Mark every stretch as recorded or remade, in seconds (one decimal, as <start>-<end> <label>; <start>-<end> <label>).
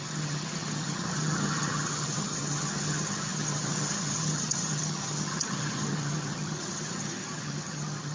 0.0-8.1 remade